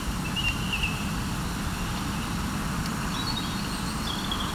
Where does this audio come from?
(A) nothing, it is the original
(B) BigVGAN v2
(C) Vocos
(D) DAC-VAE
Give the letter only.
A